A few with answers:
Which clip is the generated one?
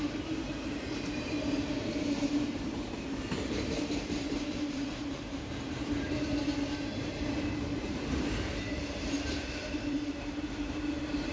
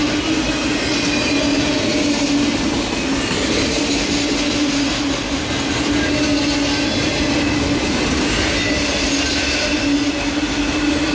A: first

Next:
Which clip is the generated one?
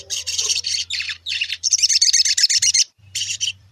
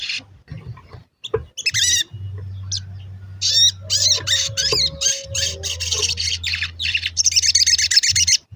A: first